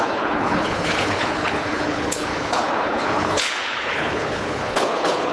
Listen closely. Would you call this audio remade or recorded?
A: remade